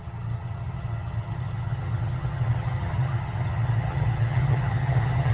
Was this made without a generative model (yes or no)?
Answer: no